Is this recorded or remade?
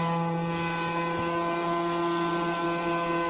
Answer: recorded